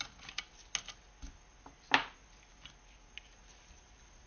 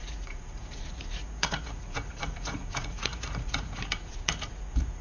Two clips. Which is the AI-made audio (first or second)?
second